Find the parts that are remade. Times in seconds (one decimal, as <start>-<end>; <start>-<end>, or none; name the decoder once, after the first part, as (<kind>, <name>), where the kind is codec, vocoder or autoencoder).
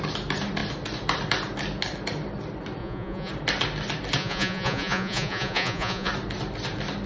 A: 2.8-3.3 (vocoder, Vocos); 4.2-6.1